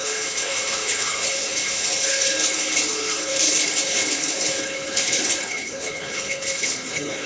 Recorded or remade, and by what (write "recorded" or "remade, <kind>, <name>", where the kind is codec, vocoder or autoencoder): remade, codec, HILCodec